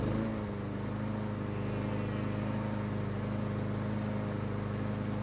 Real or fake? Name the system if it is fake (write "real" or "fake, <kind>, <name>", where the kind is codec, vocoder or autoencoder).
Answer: real